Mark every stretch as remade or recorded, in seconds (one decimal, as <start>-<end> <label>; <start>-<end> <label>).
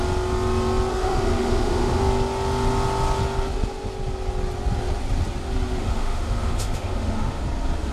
0.0-0.9 recorded; 0.9-2.0 remade; 2.0-5.8 recorded; 5.8-7.4 remade; 7.4-7.9 recorded